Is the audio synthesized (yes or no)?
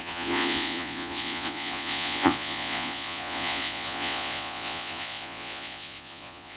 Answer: yes